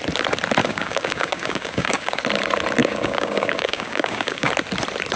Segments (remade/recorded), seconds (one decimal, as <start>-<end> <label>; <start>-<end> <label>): 0.0-0.6 recorded; 0.6-2.2 remade; 2.2-2.8 recorded; 2.8-4.5 remade; 4.5-5.2 recorded